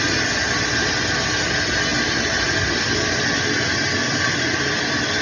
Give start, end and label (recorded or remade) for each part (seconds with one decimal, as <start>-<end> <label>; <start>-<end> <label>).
0.0-5.2 recorded